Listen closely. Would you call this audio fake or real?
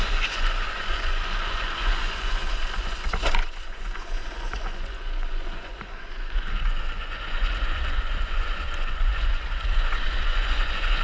fake